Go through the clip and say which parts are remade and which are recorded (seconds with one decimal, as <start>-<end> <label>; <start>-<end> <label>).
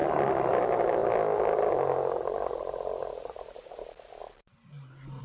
0.0-5.2 recorded